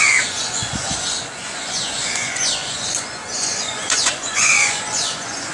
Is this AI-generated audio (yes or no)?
yes